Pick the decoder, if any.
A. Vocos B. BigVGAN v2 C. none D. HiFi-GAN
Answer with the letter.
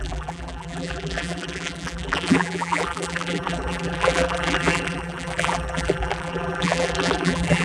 B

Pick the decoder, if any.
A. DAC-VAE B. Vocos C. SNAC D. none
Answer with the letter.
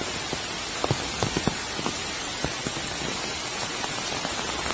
D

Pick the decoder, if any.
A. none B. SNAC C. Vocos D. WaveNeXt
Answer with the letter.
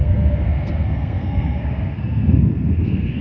B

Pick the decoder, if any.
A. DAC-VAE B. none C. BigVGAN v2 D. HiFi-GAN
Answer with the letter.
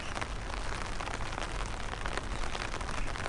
B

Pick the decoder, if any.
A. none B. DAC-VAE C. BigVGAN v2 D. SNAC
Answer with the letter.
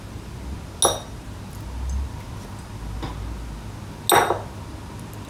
A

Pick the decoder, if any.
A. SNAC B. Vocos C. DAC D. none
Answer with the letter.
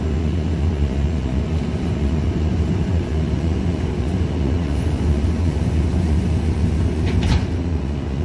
B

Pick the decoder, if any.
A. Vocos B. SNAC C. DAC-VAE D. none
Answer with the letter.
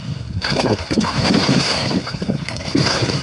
B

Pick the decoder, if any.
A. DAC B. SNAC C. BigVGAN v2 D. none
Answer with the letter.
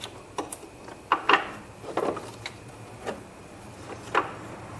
C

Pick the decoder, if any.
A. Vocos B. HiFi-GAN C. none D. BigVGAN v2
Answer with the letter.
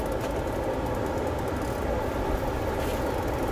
C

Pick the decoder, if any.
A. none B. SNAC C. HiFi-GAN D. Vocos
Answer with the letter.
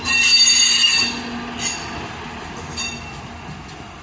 A